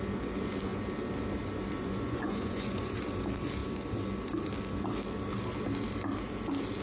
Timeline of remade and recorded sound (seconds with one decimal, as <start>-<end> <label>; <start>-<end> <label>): 0.0-1.8 recorded; 1.8-3.0 remade; 3.0-6.8 recorded